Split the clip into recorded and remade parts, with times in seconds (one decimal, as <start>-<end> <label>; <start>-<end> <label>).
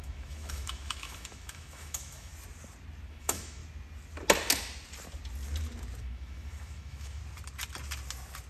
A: 0.0-2.3 remade; 2.3-3.1 recorded; 3.1-3.6 remade; 3.6-6.0 recorded; 6.0-7.2 remade; 7.2-8.5 recorded